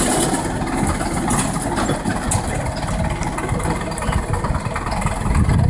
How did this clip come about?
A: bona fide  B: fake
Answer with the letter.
A